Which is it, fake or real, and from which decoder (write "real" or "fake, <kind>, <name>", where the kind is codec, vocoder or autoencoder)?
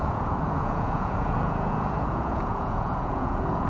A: fake, vocoder, Vocos